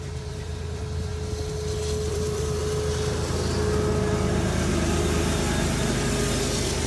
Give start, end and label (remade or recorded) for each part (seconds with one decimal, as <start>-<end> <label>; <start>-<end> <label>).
0.0-1.1 remade; 1.1-2.1 recorded; 2.1-2.6 remade; 2.6-6.9 recorded